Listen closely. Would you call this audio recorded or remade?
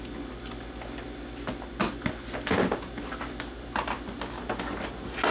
recorded